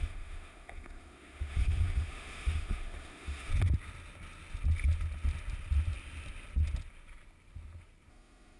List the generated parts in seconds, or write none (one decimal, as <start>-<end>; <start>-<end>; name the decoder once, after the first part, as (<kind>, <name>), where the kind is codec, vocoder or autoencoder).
0.0-3.5 (autoencoder, DAC-VAE); 8.1-8.6